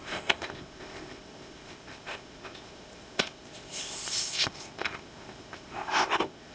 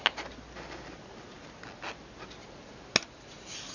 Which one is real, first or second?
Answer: second